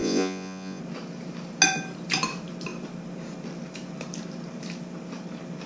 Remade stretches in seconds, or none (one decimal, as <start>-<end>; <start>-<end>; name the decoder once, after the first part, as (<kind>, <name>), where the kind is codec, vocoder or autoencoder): 0.0-0.8 (vocoder, Vocos)